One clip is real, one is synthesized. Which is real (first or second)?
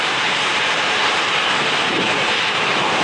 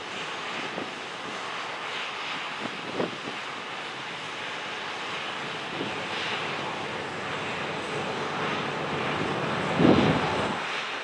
second